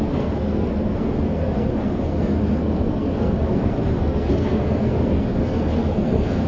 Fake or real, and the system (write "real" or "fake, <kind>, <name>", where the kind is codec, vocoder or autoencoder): fake, codec, SNAC